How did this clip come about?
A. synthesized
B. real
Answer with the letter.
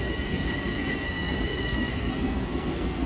A